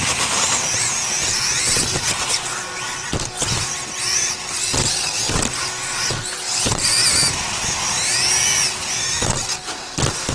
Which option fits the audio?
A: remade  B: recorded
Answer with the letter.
B